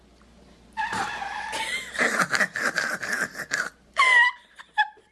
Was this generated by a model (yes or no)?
yes